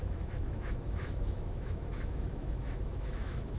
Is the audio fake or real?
fake